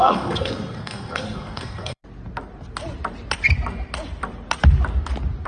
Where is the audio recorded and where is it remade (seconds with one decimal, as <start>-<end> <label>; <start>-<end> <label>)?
0.0-2.0 remade; 2.0-5.5 recorded